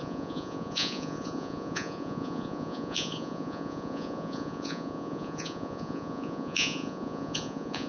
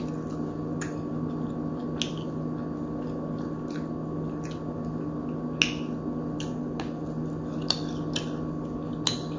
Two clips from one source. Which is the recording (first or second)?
second